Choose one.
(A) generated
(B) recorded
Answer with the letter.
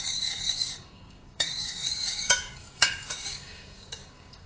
A